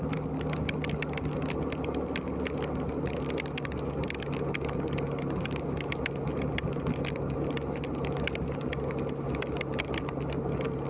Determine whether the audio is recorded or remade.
recorded